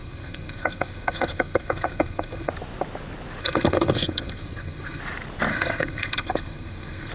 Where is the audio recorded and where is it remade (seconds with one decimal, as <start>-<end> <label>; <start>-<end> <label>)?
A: 0.0-2.5 remade; 2.5-3.4 recorded; 3.4-5.0 remade; 5.0-5.5 recorded; 5.5-7.1 remade